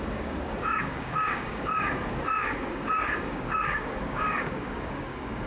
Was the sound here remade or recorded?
remade